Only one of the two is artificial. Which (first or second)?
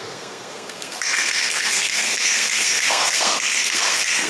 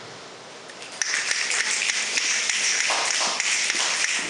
first